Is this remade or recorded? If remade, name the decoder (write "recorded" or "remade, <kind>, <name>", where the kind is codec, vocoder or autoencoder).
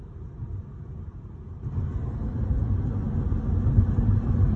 recorded